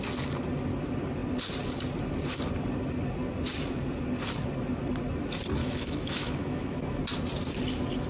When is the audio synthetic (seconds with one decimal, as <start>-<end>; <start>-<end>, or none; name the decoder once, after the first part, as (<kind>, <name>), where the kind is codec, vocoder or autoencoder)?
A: 5.6-7.0 (autoencoder, DAC-VAE)